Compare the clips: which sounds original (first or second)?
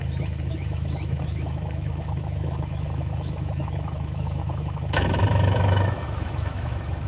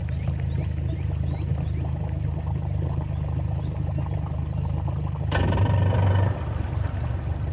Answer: second